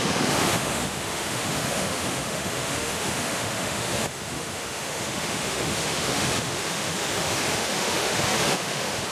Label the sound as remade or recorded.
remade